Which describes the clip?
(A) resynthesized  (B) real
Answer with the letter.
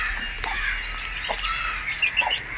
B